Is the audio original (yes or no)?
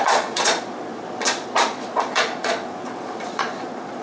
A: no